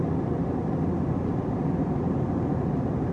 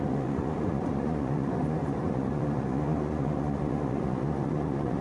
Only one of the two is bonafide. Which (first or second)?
first